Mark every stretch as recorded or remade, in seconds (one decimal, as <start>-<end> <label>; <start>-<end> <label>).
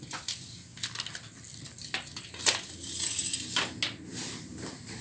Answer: 0.0-5.0 recorded